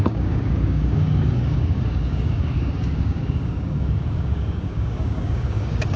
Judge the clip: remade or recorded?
remade